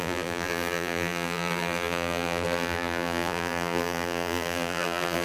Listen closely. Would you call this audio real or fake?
fake